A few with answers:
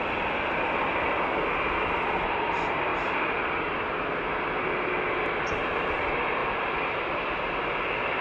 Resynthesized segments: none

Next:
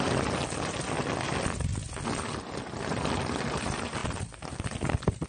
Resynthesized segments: none

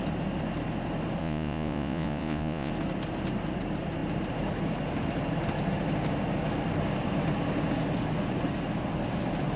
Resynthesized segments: 1.2-2.7 (vocoder, Vocos)

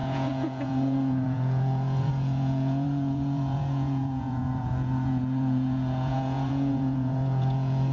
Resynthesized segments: 0.0-7.9 (vocoder, Vocos)

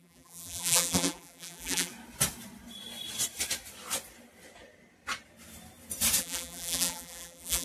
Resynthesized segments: 0.0-1.9 (vocoder, BigVGAN v2); 6.2-7.6